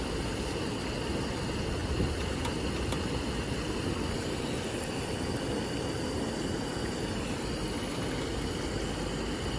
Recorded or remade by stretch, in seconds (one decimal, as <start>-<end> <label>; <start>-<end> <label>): 0.0-9.6 recorded